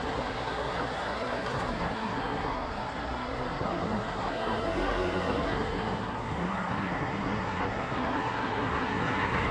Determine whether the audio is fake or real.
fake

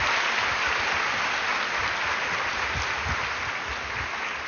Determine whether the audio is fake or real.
real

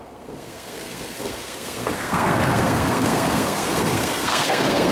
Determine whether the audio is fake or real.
fake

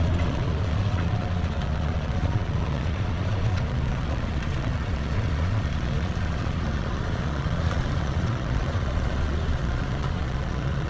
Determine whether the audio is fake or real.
fake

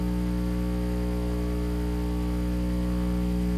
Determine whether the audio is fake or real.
real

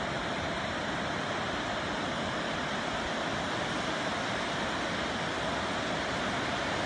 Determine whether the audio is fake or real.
real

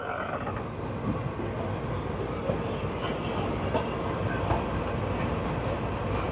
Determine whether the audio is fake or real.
real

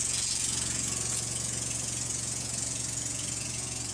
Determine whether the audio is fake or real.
fake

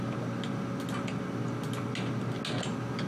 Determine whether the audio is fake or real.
real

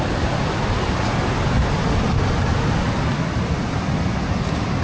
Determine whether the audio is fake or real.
real